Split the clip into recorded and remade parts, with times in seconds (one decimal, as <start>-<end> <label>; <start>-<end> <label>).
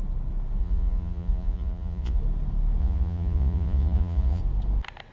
0.0-0.6 recorded; 0.6-2.2 remade; 2.2-2.8 recorded; 2.8-4.4 remade; 4.4-5.1 recorded